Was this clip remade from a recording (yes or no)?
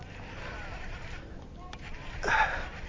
no